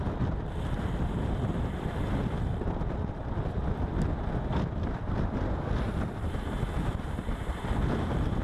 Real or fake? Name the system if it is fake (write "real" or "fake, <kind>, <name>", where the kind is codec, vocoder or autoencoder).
fake, vocoder, BigVGAN v2